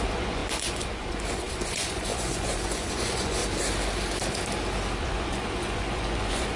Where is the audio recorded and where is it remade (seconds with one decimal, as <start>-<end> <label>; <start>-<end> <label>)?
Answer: 0.0-3.4 remade; 3.4-5.0 recorded; 5.0-6.6 remade